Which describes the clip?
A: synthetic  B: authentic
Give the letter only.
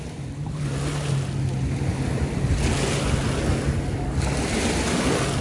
B